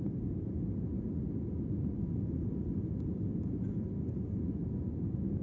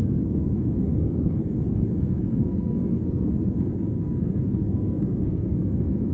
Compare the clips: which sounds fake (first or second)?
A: second